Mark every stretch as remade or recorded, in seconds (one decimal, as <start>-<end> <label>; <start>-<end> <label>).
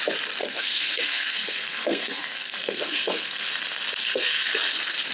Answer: 0.0-0.4 recorded; 0.4-3.5 remade; 3.5-4.0 recorded; 4.0-4.5 remade; 4.5-5.1 recorded